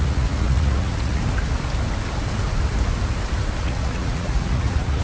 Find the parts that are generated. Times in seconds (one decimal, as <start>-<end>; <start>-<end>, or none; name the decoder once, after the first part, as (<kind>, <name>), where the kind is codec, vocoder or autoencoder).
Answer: 0.0-1.2 (vocoder, Vocos); 3.6-5.0